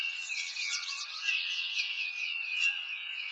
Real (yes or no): no